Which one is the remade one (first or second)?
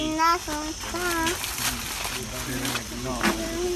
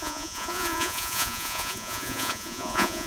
second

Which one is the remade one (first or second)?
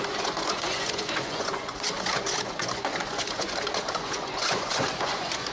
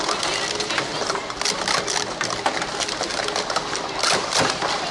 first